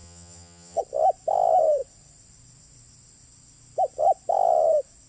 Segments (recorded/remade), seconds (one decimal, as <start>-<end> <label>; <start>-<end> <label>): 0.0-0.8 remade; 0.8-5.1 recorded